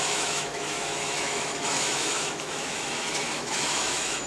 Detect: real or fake fake